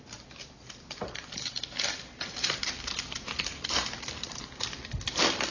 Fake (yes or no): no